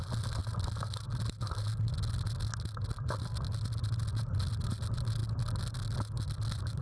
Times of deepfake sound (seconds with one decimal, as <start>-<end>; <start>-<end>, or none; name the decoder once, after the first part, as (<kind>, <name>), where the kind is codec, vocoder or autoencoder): none